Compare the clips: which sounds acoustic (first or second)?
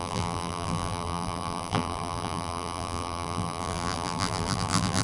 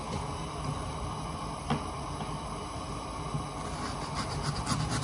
second